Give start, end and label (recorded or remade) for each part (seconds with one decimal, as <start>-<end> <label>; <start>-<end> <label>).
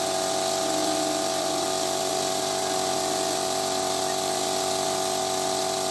0.0-0.8 recorded; 0.8-2.1 remade; 2.1-2.9 recorded; 2.9-4.4 remade; 4.4-5.9 recorded